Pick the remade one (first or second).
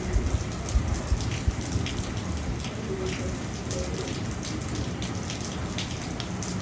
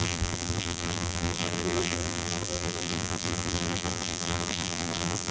second